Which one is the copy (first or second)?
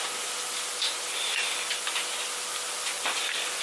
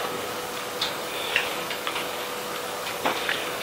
second